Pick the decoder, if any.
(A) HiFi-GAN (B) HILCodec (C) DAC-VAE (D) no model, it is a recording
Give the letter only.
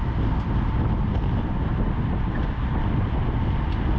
D